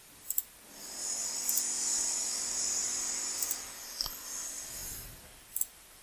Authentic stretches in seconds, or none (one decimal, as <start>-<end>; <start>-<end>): 0.0-6.0